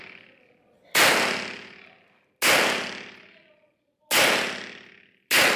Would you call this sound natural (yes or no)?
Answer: yes